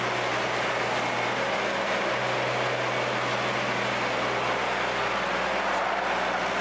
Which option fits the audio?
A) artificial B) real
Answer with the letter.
B